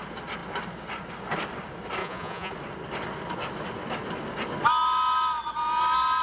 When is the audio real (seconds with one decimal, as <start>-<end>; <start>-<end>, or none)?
0.0-2.0; 2.5-6.2

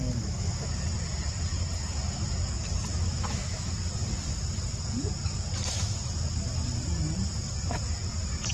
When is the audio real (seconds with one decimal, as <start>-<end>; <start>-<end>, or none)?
0.8-2.9; 3.7-8.5

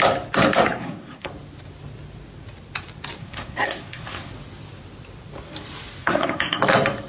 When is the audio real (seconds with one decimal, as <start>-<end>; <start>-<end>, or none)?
0.0-0.6; 1.3-3.2; 4.3-6.0; 6.6-7.1

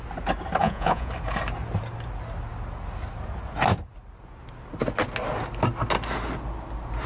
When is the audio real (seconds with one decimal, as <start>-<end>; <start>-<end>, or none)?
0.0-0.6; 1.1-7.1

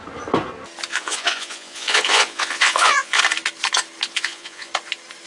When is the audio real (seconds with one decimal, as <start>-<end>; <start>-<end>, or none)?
0.0-0.9; 3.2-4.1; 4.7-5.3

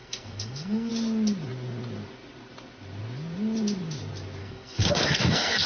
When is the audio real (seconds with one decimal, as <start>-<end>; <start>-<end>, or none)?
0.9-4.4

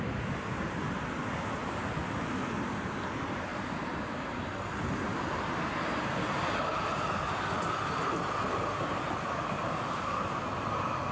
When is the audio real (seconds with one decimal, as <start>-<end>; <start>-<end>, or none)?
0.0-1.6; 2.3-3.5; 6.1-11.1